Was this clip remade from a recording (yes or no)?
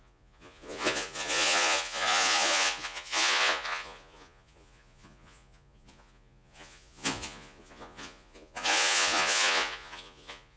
yes